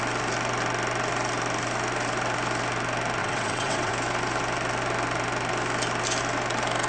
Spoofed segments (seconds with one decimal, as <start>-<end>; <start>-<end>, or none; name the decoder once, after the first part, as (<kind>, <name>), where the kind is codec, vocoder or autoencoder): 3.2-3.9 (vocoder, WaveNeXt)